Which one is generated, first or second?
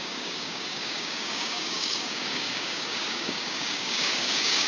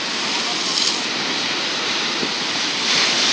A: first